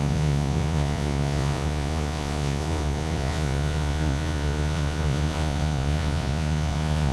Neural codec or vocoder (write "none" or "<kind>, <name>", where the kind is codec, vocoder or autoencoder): vocoder, Vocos